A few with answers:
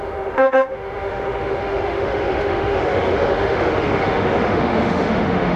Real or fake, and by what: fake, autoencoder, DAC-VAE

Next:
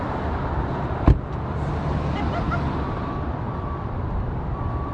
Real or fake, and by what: fake, vocoder, BigVGAN v2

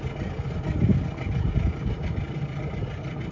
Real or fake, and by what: real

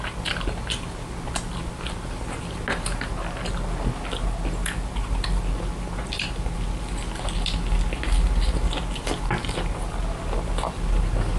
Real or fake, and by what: real